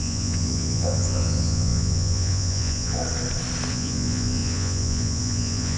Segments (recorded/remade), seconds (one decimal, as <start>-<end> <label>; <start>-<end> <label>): 0.0-3.0 remade; 3.0-3.7 recorded; 3.7-5.8 remade